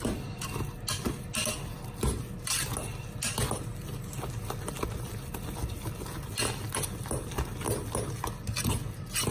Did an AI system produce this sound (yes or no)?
no